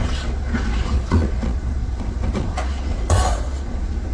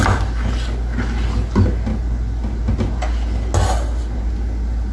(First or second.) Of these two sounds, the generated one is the first